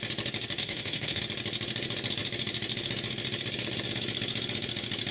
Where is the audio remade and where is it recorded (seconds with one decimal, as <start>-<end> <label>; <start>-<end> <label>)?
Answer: 0.0-0.6 recorded; 0.6-1.2 remade; 1.2-5.1 recorded